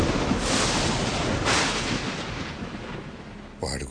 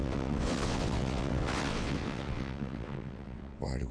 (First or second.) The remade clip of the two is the second